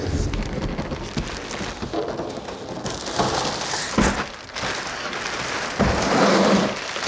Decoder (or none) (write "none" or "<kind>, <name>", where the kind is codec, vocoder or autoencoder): none